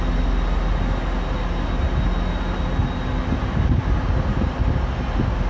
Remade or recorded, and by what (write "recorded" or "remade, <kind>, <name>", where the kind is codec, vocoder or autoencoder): recorded